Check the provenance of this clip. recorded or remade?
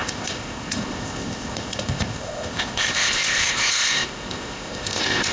remade